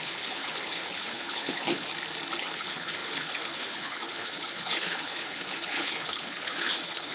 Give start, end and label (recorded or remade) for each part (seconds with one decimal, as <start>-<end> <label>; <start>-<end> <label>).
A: 0.0-1.9 remade; 1.9-2.4 recorded; 2.4-7.1 remade